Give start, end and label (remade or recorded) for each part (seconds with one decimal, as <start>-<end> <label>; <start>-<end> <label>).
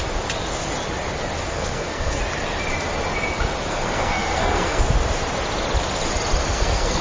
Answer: 0.0-1.5 recorded; 1.5-2.2 remade; 2.2-3.7 recorded; 3.7-4.8 remade; 4.8-6.4 recorded; 6.4-7.0 remade